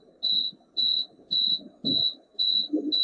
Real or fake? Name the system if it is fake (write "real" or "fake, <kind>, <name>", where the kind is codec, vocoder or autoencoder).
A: real